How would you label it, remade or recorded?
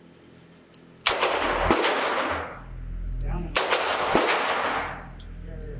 recorded